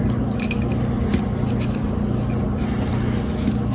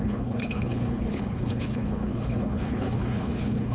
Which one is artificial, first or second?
second